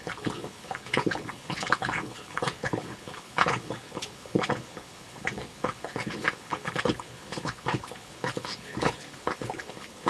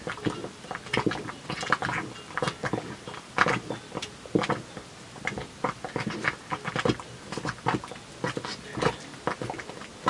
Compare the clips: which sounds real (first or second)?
second